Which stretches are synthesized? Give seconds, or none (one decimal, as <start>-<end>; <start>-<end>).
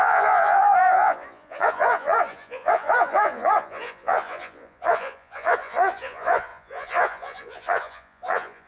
0.0-8.7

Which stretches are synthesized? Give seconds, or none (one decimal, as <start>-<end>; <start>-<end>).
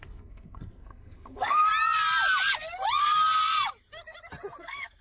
0.0-1.7; 4.6-5.0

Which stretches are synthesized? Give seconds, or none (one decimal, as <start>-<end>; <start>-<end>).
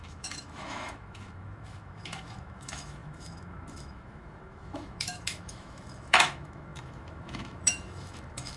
0.0-8.6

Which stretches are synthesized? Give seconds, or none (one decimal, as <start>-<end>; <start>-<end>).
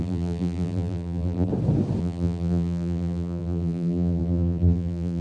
0.0-1.5; 2.0-5.2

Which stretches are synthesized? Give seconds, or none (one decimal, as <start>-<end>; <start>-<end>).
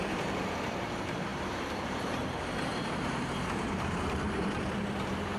0.0-5.4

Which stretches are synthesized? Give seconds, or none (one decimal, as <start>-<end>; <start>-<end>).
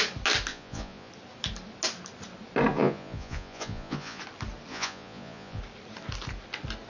0.5-1.1; 2.7-4.2; 4.7-5.6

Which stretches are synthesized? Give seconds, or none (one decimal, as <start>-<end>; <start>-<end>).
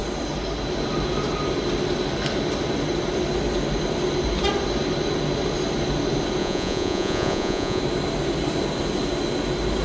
6.4-7.8